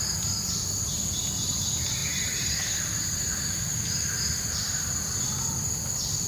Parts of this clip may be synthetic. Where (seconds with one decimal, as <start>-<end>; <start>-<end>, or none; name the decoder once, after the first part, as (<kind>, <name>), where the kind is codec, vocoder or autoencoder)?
2.0-4.9 (vocoder, BigVGAN v2)